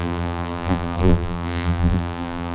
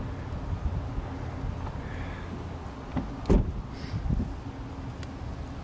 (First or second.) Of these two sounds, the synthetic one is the first